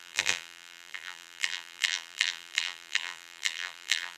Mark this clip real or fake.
fake